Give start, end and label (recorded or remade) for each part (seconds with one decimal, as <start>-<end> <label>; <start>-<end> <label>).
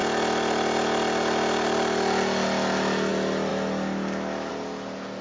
0.0-5.2 recorded